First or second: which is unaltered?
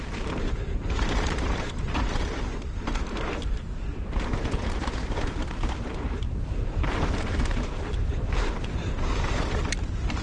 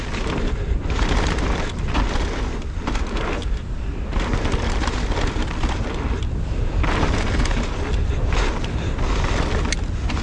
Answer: second